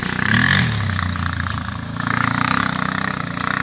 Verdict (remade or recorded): recorded